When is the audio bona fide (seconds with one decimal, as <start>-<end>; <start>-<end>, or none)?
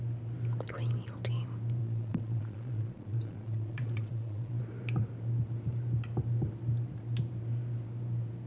0.0-1.8; 4.6-8.5